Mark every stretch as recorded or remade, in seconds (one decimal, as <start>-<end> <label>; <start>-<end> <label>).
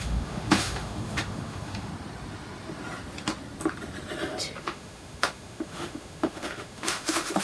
0.0-1.9 remade; 1.9-4.6 recorded; 4.6-7.4 remade